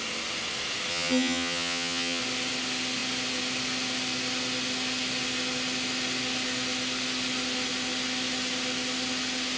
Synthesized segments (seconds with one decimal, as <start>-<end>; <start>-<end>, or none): 0.9-2.2